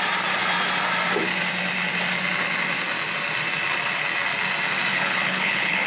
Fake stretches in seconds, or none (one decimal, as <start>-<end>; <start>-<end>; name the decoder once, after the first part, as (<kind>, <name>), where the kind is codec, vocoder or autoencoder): 4.9-5.9 (codec, HILCodec)